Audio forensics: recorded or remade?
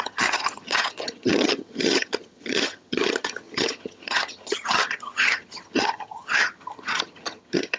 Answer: remade